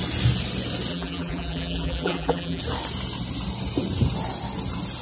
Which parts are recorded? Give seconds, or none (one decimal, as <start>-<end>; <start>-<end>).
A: 0.0-0.9; 2.6-5.0